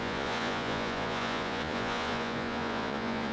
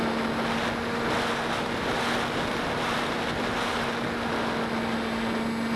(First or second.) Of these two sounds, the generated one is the first